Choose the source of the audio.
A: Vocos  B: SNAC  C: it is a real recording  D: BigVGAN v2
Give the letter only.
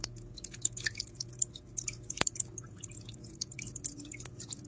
A